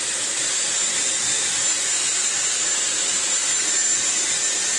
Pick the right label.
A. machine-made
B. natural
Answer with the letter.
B